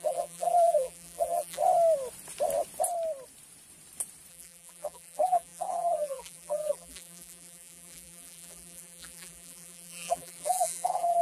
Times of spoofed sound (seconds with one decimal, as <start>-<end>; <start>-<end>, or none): 0.0-1.6; 4.3-11.2